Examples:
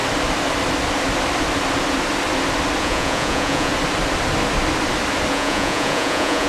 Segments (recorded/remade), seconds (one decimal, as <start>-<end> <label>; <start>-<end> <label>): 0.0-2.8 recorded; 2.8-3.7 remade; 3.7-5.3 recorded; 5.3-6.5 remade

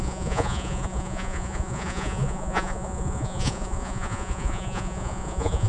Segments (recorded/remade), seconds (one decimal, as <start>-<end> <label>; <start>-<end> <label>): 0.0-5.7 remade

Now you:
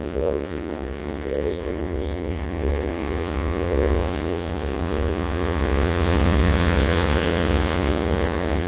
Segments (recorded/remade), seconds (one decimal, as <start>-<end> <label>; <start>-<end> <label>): 0.0-8.7 remade

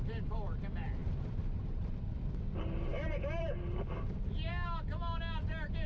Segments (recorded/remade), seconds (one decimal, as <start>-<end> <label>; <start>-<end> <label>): 0.0-5.9 recorded

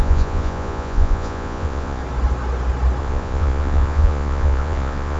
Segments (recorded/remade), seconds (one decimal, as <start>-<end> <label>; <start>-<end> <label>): 0.0-2.0 remade; 2.0-3.0 recorded; 3.0-5.2 remade

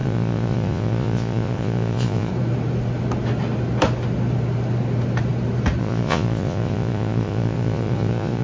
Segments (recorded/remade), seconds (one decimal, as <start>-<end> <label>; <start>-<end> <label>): 0.0-2.3 remade; 2.3-5.8 recorded; 5.8-8.4 remade